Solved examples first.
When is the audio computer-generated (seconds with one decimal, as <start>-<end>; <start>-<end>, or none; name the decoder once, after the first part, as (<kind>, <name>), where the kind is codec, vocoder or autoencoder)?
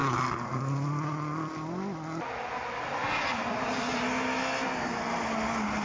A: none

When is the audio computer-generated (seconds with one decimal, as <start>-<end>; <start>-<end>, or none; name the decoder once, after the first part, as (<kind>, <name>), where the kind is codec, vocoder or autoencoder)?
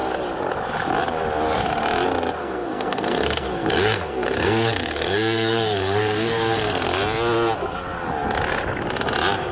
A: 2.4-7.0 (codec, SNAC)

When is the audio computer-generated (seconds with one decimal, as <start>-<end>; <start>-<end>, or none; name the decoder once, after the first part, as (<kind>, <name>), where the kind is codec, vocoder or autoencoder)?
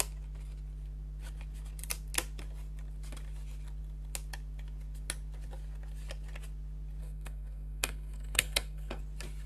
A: 7.0-9.0 (codec, SNAC)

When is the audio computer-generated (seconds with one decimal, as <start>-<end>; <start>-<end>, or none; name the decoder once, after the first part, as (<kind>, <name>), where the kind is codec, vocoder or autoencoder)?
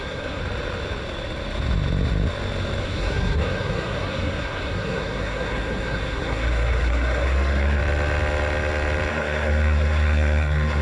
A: 0.0-0.4 (codec, SNAC); 2.8-7.8; 9.1-10.8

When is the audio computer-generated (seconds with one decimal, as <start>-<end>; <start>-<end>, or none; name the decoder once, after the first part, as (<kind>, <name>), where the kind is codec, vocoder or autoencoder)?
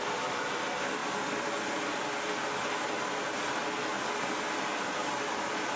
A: none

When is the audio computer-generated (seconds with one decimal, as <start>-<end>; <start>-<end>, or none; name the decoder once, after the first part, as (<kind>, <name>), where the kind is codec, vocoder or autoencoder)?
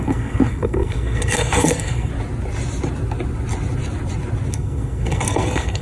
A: 0.0-2.1 (codec, SNAC); 4.5-5.8